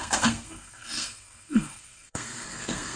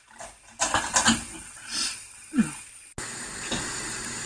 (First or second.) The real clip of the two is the second